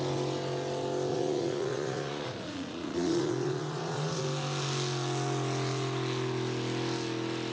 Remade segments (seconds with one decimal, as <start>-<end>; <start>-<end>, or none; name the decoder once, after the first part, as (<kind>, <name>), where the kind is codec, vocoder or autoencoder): 1.1-4.2 (vocoder, Vocos)